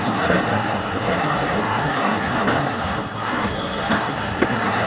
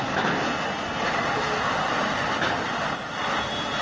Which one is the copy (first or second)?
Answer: first